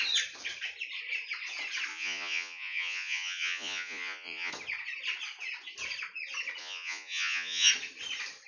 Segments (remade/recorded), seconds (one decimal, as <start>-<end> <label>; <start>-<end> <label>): 0.0-1.9 recorded; 1.9-4.5 remade; 4.5-6.6 recorded; 6.6-7.7 remade; 7.7-8.5 recorded